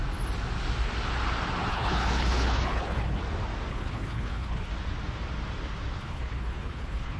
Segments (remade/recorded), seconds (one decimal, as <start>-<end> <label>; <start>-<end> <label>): 0.0-1.7 recorded; 1.7-3.2 remade; 3.2-3.7 recorded; 3.7-4.7 remade; 4.7-6.0 recorded; 6.0-7.2 remade